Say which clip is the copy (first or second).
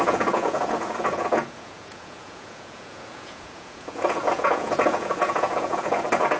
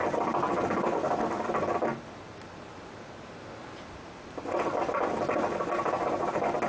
first